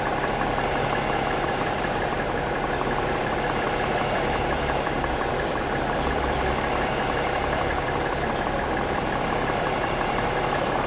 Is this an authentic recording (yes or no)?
no